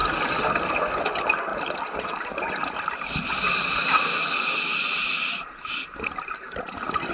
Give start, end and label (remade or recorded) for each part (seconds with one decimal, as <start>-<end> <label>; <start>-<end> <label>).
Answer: 0.0-7.1 recorded